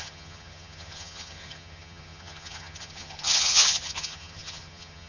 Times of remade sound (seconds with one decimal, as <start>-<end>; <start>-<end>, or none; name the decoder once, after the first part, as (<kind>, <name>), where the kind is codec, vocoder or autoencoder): 0.0-5.1 (vocoder, HiFi-GAN)